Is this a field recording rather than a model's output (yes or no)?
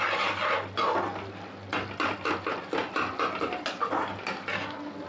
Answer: yes